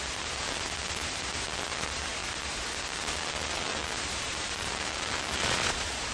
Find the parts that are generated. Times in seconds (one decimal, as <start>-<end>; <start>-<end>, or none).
5.4-6.1